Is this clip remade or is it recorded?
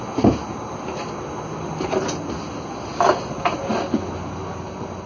recorded